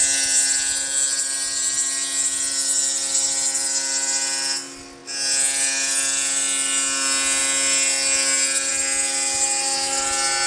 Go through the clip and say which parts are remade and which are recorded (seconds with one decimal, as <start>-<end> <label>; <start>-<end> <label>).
0.0-10.5 recorded